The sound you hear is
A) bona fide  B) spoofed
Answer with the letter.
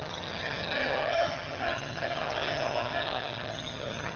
B